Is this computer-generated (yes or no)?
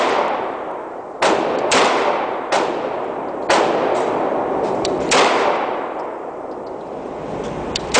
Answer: yes